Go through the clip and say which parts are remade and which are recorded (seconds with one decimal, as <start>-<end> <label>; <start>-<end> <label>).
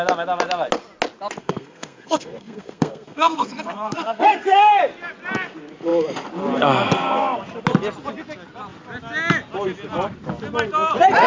0.0-1.4 recorded; 1.4-4.8 remade; 4.8-11.3 recorded